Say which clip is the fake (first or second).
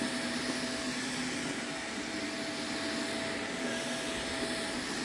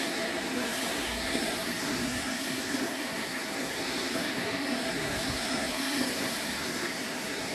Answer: second